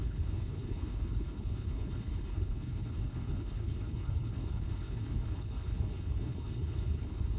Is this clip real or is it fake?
fake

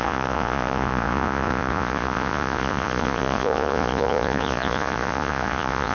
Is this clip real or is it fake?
fake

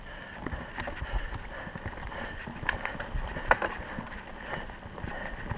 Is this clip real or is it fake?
real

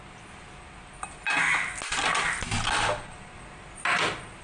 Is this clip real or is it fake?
real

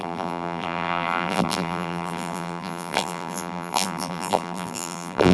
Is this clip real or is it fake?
fake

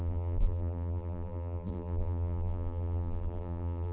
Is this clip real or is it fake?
fake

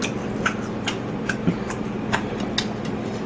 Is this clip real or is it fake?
real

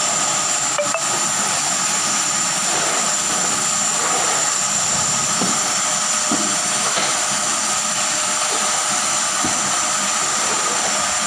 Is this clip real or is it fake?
real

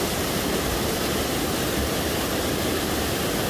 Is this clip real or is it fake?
real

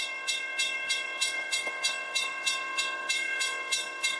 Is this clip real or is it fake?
fake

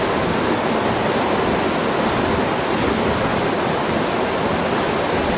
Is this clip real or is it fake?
real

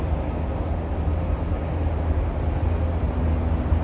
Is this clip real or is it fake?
real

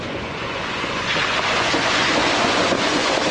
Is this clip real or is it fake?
fake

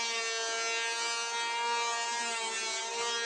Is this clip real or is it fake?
real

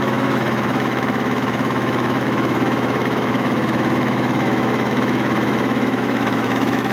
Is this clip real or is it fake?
fake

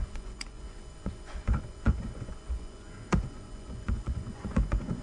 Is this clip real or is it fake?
fake